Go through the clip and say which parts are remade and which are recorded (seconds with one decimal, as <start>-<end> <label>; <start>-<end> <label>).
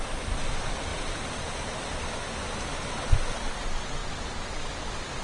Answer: 0.0-5.2 recorded